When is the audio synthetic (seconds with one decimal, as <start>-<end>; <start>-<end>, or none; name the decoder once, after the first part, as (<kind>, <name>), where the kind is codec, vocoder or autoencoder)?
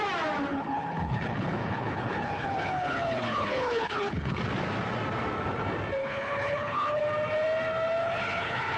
0.5-4.4 (codec, HILCodec); 6.0-7.0; 8.0-8.8